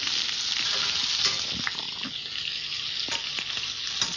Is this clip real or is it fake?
real